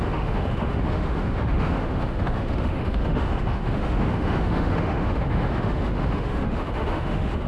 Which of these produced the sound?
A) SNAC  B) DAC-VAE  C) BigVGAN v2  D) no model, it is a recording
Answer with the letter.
B